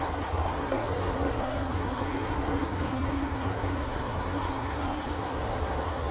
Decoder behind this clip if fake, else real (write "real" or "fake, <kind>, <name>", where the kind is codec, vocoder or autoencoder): fake, codec, SNAC